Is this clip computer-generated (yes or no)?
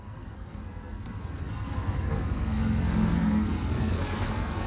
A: yes